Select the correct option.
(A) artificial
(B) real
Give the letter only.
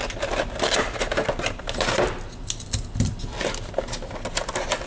B